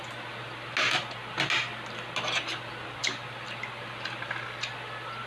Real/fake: real